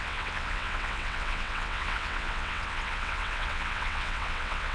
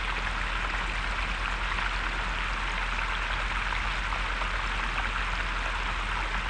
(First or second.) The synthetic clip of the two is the first